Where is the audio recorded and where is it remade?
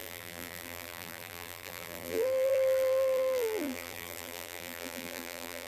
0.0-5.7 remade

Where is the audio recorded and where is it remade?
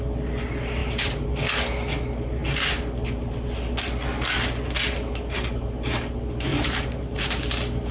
0.0-0.8 recorded; 0.8-1.3 remade; 1.3-6.5 recorded; 6.5-7.2 remade; 7.2-7.9 recorded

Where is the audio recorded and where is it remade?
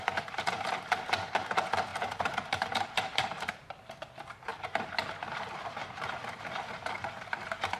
0.0-1.9 recorded; 1.9-3.5 remade; 3.5-4.5 recorded; 4.5-5.1 remade; 5.1-7.8 recorded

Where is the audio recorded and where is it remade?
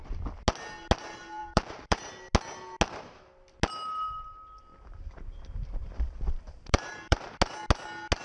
0.0-1.4 recorded; 1.4-2.1 remade; 2.1-4.7 recorded; 4.7-7.3 remade; 7.3-8.2 recorded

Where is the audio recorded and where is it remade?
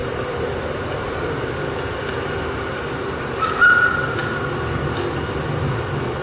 0.0-3.7 remade; 3.7-6.2 recorded